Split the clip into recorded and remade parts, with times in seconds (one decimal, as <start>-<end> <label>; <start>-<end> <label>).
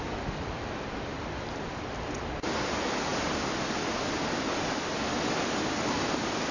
0.0-6.5 recorded